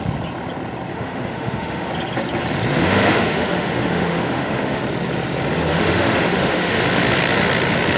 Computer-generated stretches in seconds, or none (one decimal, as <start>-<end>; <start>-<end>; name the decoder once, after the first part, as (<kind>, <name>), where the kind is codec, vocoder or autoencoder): 0.9-1.9 (autoencoder, DAC-VAE); 2.7-4.8; 5.7-6.8